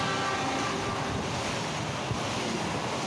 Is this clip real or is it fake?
real